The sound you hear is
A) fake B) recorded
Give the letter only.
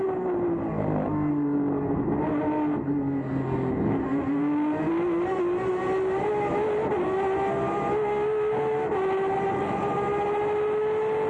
B